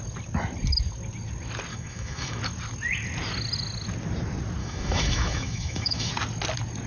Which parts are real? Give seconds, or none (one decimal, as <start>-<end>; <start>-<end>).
0.0-1.7; 2.4-4.6; 6.1-6.9